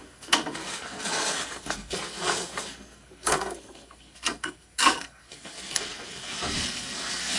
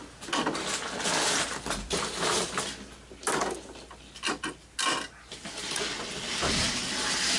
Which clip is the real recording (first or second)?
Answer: second